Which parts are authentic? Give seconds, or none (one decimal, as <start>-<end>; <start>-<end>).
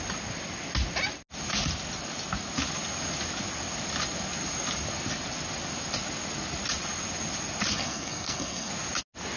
0.0-7.7; 8.7-9.4